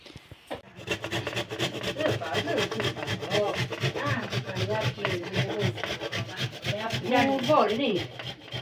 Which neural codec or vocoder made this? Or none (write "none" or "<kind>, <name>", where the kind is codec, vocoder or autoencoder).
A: none